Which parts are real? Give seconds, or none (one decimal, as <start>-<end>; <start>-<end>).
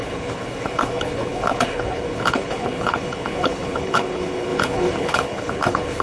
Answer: none